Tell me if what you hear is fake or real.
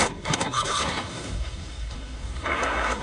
fake